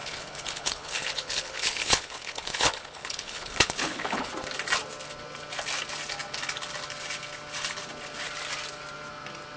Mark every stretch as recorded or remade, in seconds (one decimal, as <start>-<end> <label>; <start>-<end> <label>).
0.0-4.3 remade; 4.3-9.6 recorded